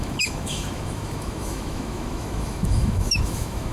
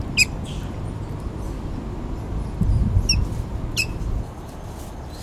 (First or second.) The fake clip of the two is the first